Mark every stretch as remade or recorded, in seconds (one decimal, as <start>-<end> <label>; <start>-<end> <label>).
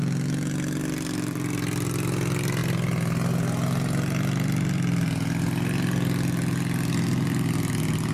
0.0-8.1 recorded